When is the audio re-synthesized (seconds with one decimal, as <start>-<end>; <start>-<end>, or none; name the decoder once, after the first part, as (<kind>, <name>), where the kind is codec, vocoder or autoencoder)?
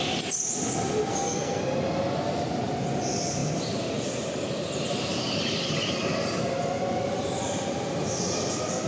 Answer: 1.1-1.6 (codec, SNAC)